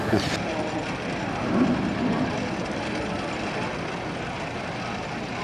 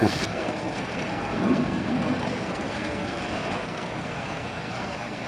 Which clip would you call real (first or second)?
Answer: first